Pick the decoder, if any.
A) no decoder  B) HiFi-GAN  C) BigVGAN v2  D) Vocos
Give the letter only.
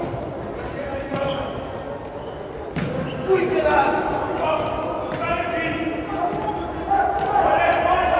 A